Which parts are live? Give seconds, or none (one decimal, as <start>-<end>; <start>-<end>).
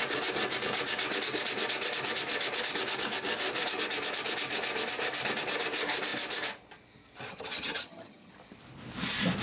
0.0-7.3; 8.3-9.4